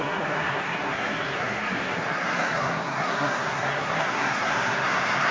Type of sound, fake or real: fake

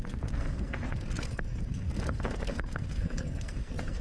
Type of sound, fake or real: fake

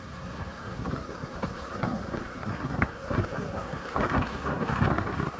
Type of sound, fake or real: fake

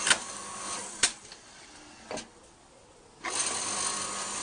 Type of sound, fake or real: real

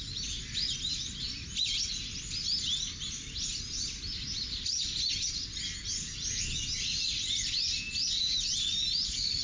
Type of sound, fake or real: real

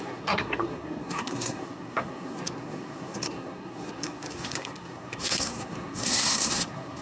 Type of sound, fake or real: fake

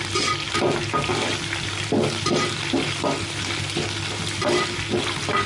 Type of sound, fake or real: real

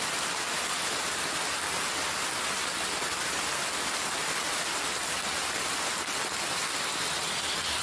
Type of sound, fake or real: real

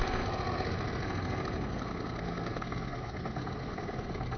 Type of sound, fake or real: fake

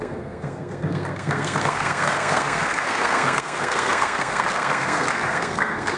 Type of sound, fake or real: fake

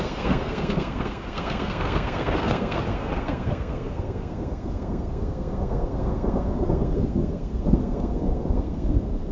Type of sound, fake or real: fake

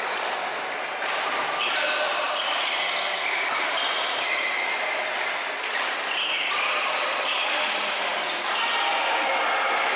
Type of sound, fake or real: real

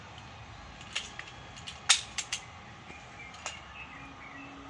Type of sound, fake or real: real